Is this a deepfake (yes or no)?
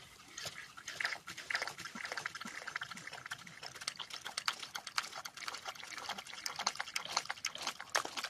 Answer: no